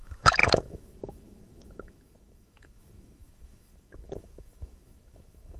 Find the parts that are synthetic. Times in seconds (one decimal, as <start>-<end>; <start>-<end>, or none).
0.0-5.6